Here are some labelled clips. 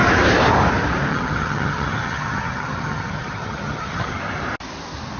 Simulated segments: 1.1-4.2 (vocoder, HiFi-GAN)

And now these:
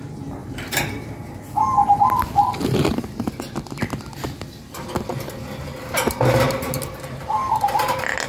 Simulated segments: 0.4-1.1 (vocoder, BigVGAN v2)

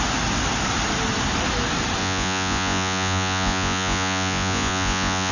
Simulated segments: 2.0-5.3 (vocoder, Vocos)